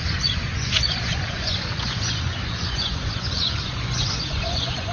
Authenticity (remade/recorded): remade